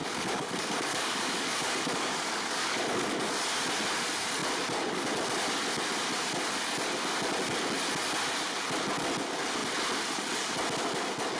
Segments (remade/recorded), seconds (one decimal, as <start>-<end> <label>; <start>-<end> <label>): 0.0-3.1 remade; 3.1-11.4 recorded